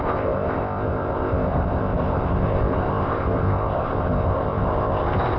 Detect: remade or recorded remade